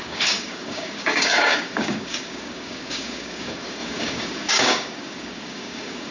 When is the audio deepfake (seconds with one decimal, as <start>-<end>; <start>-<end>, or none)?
0.0-6.1